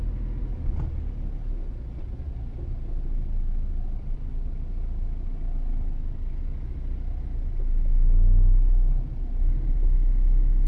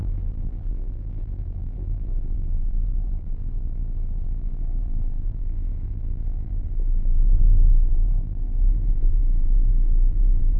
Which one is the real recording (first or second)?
first